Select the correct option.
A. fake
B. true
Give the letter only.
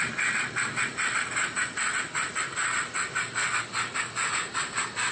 B